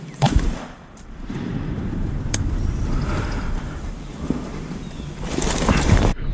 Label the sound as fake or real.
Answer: fake